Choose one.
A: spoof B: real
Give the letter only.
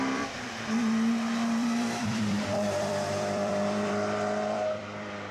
A